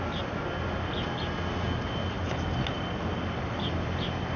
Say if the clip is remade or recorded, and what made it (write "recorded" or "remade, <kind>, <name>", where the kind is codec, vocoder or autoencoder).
recorded